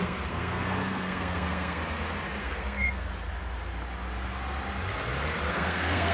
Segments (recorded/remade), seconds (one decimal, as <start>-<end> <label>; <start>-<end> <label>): 0.0-1.8 remade; 1.8-2.4 recorded; 2.4-3.1 remade; 3.1-5.5 recorded; 5.5-6.1 remade